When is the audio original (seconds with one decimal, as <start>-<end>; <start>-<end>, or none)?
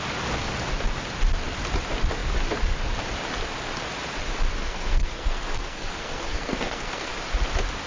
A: 0.0-4.6; 7.1-7.9